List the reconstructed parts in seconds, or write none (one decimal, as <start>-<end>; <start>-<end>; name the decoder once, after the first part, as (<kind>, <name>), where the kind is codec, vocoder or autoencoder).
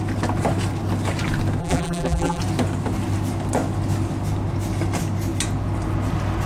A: 1.6-2.4 (vocoder, BigVGAN v2)